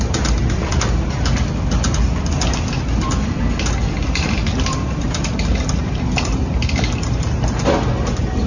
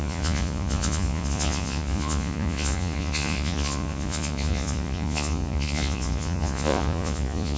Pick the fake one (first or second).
second